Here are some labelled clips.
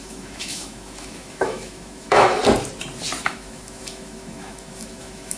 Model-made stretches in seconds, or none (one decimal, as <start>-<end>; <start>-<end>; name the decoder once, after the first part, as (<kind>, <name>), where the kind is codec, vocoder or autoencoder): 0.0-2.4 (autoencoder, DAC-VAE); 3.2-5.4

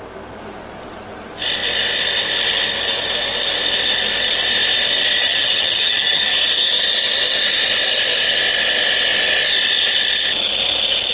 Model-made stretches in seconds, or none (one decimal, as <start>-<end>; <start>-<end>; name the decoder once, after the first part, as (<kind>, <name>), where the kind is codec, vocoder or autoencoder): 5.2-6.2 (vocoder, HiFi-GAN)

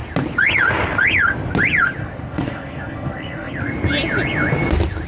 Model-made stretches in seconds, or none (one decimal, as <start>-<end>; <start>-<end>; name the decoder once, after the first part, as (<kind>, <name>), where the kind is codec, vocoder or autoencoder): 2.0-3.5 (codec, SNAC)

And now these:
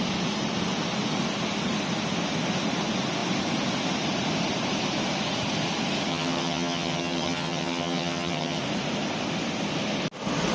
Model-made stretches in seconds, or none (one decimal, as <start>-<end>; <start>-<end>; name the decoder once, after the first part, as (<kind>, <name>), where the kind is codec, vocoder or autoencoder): 6.1-8.6 (vocoder, HiFi-GAN)

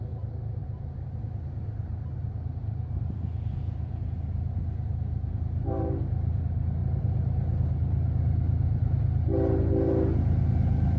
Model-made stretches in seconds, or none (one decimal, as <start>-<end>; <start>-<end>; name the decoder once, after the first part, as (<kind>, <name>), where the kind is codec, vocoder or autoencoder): none

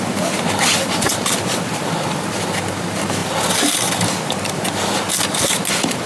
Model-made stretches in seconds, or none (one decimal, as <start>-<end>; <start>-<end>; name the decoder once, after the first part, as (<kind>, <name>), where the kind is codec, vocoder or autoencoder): none

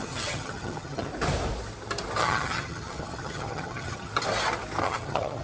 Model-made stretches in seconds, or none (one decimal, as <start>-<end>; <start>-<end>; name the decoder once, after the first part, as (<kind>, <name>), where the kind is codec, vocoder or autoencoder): 0.0-1.1 (vocoder, HiFi-GAN); 2.2-4.1; 4.8-5.4

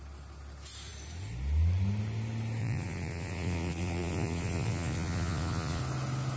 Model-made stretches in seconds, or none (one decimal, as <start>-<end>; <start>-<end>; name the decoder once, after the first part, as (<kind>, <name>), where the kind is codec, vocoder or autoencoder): 2.6-5.8 (vocoder, Vocos)